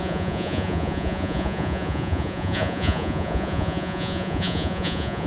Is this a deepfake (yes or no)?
yes